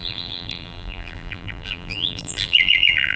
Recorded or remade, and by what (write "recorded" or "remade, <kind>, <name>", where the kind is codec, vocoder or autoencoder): remade, vocoder, BigVGAN v2